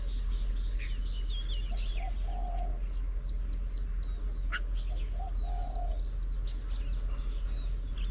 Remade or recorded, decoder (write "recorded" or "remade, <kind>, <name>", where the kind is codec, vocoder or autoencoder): recorded